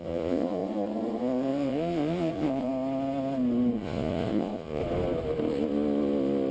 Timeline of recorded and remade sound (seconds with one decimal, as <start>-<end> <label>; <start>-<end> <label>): 0.0-2.7 remade; 2.7-3.7 recorded; 3.7-4.8 remade; 4.8-6.5 recorded